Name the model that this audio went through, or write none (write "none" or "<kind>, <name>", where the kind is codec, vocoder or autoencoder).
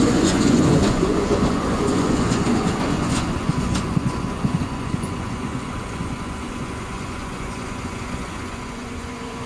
vocoder, Vocos